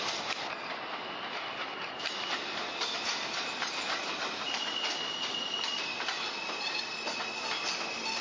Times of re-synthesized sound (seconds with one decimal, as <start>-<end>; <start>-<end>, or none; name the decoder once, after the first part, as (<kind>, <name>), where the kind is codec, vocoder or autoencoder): 0.0-8.2 (vocoder, BigVGAN v2)